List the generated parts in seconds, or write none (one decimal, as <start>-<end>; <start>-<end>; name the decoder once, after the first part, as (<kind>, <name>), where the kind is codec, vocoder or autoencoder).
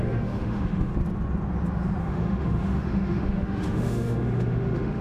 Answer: 0.0-0.9 (autoencoder, DAC-VAE); 2.0-5.0